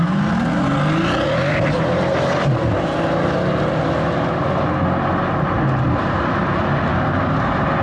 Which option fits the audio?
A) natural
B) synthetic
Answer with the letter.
A